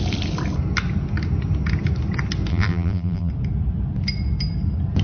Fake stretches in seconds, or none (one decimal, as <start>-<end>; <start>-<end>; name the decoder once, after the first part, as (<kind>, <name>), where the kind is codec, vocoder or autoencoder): 2.5-3.3 (vocoder, BigVGAN v2)